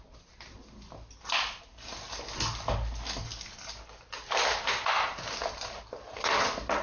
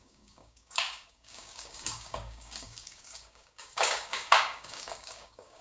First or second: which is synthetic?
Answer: second